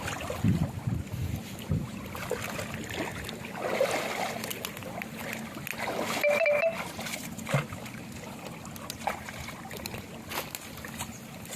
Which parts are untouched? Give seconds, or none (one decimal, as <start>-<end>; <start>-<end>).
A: 0.0-11.6